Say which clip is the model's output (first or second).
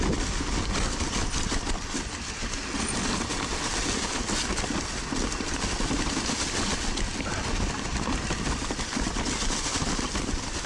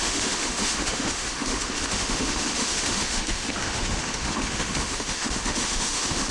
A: second